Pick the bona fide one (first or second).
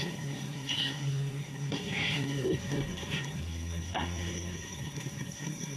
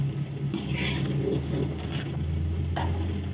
second